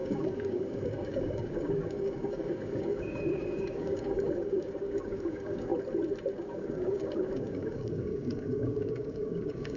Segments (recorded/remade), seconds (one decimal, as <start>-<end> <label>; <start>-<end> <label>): 0.0-5.7 remade; 5.7-6.3 recorded; 6.3-9.8 remade